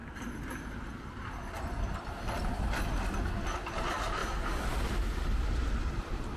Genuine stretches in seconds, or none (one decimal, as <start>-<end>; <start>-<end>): 0.0-6.4